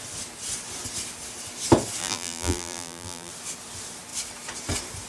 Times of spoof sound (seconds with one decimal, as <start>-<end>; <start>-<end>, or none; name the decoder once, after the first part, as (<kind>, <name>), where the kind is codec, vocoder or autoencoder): 2.0-3.3 (vocoder, BigVGAN v2)